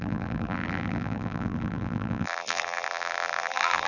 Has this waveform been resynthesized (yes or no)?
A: yes